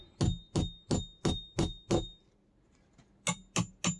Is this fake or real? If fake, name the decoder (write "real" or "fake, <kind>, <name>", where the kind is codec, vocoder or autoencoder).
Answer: real